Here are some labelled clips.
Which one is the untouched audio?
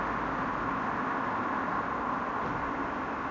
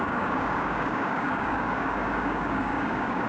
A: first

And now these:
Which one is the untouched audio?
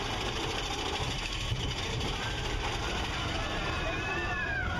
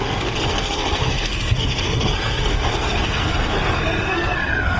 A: first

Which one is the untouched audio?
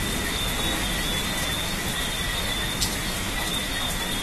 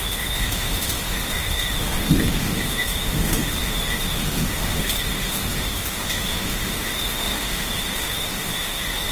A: first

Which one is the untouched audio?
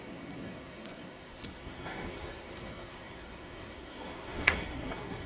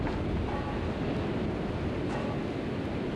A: second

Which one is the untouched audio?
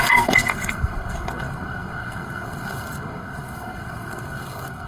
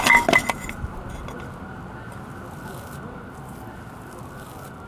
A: second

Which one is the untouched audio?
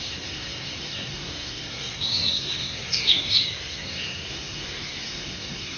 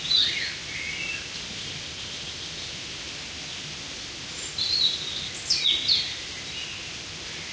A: second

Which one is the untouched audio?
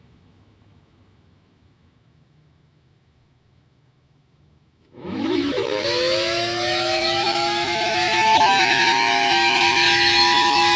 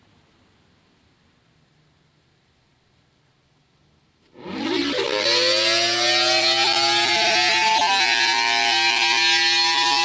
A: second